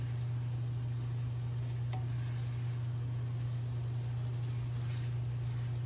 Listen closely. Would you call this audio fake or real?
real